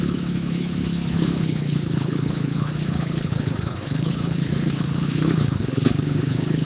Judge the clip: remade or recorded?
remade